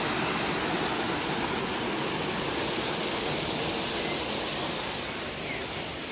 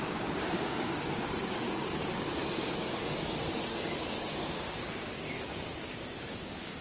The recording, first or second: first